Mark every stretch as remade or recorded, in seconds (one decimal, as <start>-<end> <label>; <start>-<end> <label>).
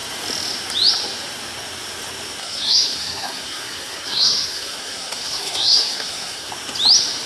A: 0.0-2.4 recorded; 2.4-6.5 remade; 6.5-7.3 recorded